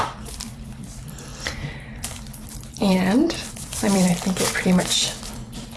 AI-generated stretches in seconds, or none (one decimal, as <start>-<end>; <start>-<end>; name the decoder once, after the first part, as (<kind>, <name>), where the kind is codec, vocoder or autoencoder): 0.0-5.8 (vocoder, BigVGAN v2)